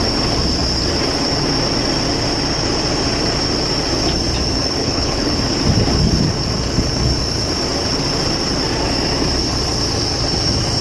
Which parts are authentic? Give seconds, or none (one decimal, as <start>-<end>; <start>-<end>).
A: 0.0-4.8; 5.4-10.8